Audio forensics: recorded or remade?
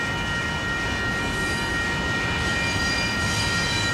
recorded